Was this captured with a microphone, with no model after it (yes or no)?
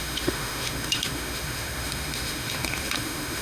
no